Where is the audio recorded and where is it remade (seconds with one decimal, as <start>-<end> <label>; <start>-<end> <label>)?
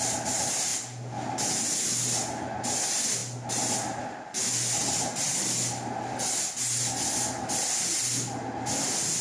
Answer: 0.0-9.2 recorded